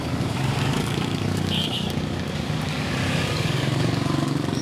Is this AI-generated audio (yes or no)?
yes